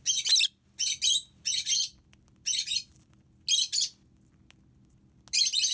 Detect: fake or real real